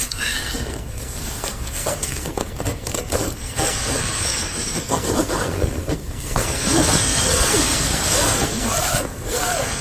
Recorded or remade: remade